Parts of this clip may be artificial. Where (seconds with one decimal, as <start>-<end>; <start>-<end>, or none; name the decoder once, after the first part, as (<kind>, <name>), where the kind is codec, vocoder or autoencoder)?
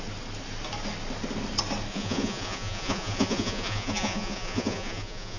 1.9-5.4 (vocoder, Vocos)